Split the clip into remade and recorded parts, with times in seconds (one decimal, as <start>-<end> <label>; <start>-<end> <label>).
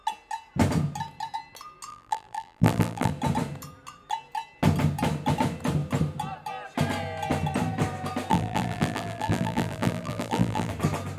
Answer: 0.0-1.9 recorded; 1.9-3.1 remade; 3.1-8.3 recorded; 8.3-10.7 remade; 10.7-11.2 recorded